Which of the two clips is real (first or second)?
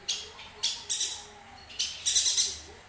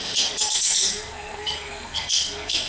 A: first